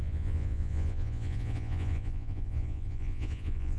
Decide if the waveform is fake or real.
fake